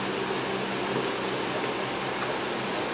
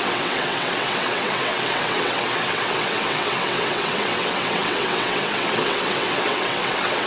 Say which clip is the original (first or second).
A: first